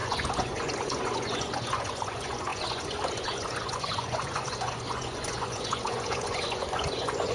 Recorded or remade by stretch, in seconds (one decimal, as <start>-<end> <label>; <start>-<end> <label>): 0.0-7.3 remade